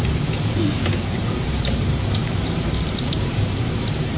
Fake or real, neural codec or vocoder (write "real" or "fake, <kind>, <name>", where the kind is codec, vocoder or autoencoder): fake, vocoder, BigVGAN v2